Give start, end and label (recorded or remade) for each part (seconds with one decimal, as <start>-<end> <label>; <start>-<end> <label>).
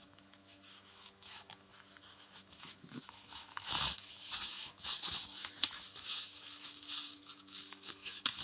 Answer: 0.0-8.4 remade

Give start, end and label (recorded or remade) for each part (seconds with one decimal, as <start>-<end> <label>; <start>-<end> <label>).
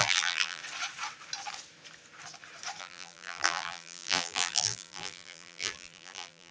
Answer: 0.0-0.6 remade; 0.6-2.8 recorded; 2.8-6.5 remade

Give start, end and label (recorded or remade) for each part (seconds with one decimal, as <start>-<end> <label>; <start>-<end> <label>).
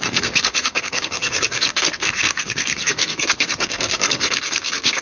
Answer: 0.0-5.0 remade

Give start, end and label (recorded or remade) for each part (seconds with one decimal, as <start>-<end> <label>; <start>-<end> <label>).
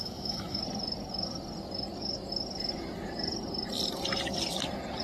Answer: 0.0-0.6 remade; 0.6-5.0 recorded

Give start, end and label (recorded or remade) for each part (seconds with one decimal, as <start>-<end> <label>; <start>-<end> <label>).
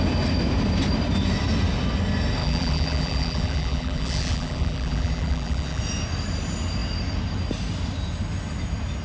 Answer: 0.0-2.4 recorded; 2.4-5.8 remade; 5.8-9.0 recorded